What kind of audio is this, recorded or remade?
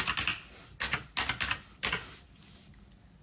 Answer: recorded